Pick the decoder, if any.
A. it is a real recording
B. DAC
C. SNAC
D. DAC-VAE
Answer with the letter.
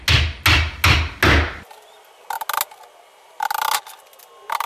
A